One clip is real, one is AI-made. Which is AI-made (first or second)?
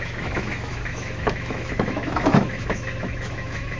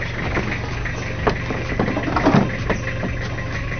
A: first